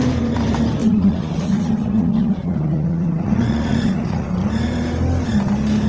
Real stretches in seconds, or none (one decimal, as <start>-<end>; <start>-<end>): 0.0-0.8; 4.3-5.9